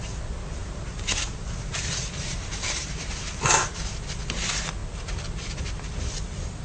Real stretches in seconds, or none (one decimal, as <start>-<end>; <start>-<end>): 0.0-0.6; 3.2-6.6